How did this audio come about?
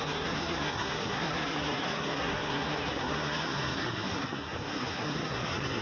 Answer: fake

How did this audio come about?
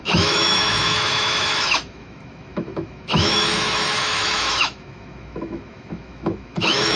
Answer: fake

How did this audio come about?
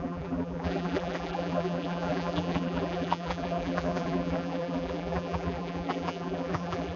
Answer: fake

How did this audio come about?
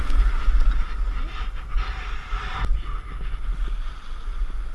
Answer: real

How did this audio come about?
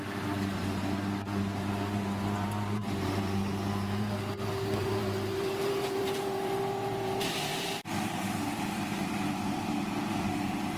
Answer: fake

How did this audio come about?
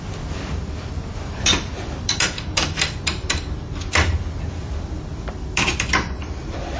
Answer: fake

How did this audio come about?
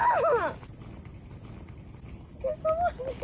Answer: real